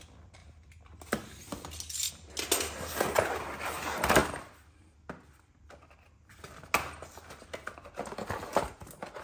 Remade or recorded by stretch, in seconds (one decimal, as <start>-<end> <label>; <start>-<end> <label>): 0.0-9.2 recorded